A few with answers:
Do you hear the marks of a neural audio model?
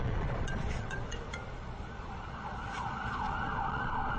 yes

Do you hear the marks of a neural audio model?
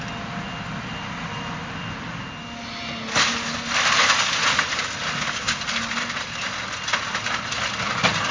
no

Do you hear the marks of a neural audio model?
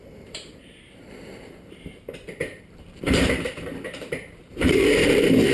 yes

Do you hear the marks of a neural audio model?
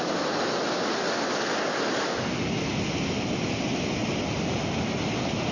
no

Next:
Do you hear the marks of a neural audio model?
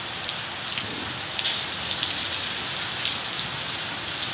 no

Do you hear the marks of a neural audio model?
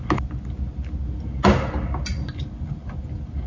no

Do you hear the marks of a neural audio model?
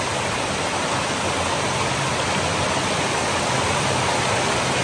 no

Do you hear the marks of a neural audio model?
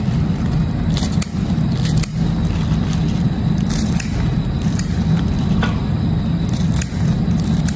yes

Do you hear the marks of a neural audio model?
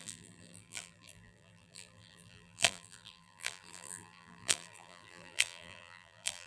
yes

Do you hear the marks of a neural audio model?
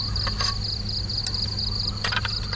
no